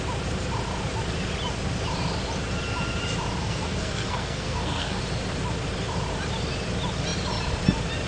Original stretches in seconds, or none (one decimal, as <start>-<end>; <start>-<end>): 0.0-3.4; 5.0-8.1